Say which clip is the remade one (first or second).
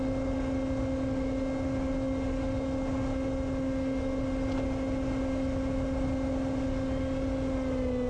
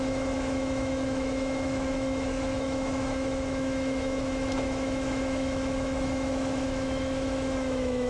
second